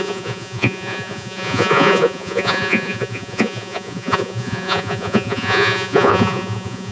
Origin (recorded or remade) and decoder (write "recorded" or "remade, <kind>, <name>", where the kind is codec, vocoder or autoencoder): remade, vocoder, Vocos